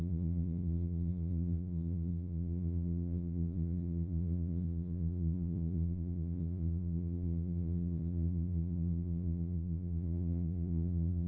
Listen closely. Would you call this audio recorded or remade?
remade